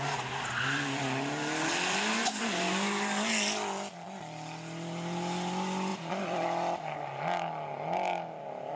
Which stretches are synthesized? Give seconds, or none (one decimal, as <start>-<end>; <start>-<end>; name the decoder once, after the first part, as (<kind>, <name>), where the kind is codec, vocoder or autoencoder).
5.9-6.9 (vocoder, BigVGAN v2)